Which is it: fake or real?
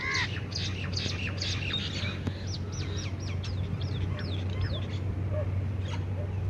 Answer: real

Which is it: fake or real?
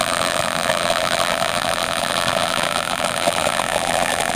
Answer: fake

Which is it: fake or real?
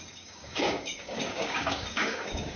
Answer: fake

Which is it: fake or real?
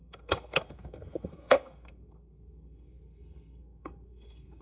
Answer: fake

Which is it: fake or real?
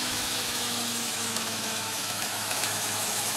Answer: fake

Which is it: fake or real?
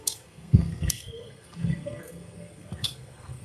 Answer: fake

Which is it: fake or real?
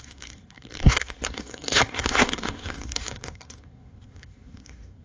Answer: fake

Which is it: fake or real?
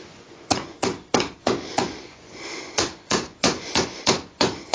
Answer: fake